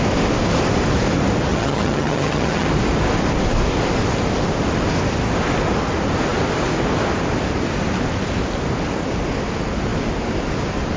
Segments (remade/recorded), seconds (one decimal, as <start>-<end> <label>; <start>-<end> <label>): 0.0-1.5 recorded; 1.5-2.7 remade; 2.7-11.0 recorded

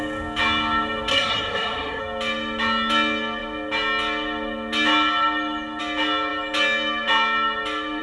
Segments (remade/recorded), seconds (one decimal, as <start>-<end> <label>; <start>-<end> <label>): 0.0-1.1 recorded; 1.1-2.0 remade; 2.0-8.0 recorded

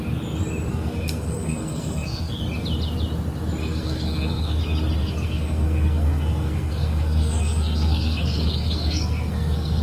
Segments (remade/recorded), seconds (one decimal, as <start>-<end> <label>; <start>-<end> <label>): 0.0-0.7 recorded; 0.7-2.4 remade; 2.4-3.6 recorded; 3.6-4.6 remade; 4.6-5.0 recorded; 5.0-9.8 remade

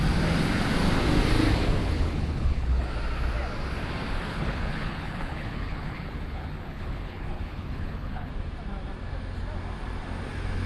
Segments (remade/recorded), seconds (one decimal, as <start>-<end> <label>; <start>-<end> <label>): 0.0-1.8 recorded; 1.8-2.8 remade; 2.8-4.3 recorded; 4.3-8.3 remade; 8.3-10.7 recorded

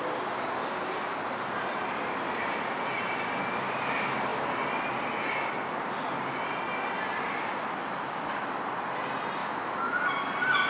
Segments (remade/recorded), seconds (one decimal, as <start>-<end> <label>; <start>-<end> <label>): 0.0-10.7 recorded

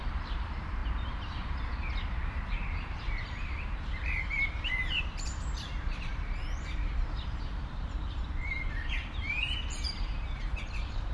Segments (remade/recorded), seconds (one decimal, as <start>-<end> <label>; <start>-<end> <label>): 0.0-11.1 remade

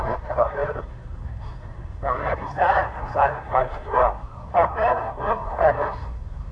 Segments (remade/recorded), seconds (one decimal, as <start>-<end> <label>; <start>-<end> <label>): 0.0-6.5 remade